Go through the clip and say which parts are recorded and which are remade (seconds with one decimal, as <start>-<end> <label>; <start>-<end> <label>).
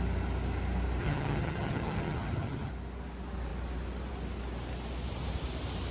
0.0-1.0 recorded; 1.0-2.7 remade; 2.7-5.9 recorded